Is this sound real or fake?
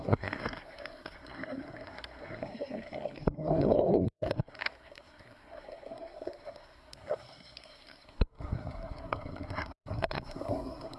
fake